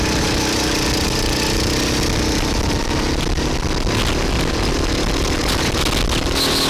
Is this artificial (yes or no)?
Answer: no